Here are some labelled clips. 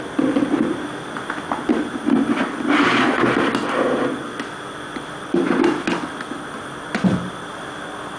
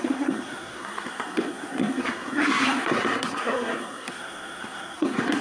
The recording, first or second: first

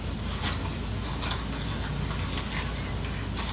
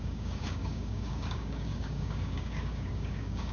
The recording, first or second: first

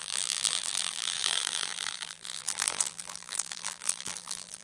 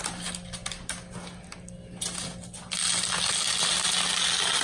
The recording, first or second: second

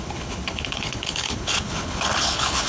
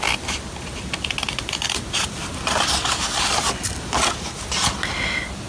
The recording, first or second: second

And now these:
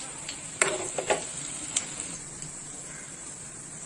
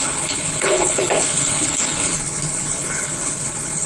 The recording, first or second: first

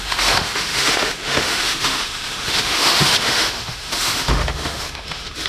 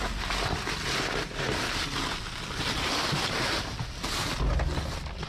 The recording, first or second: second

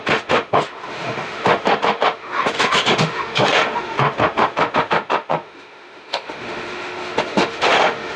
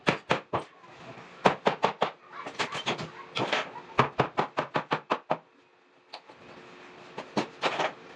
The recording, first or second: second